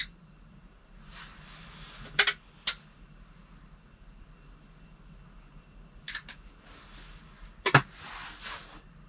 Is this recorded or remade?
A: recorded